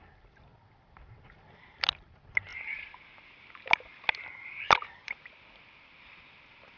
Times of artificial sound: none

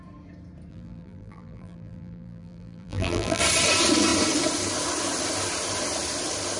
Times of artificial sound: 0.7-3.4 (vocoder, BigVGAN v2)

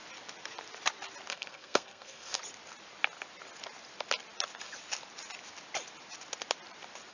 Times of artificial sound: 1.3-2.4 (codec, SNAC)